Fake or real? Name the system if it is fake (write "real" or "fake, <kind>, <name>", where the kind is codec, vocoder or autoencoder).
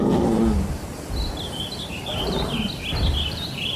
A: real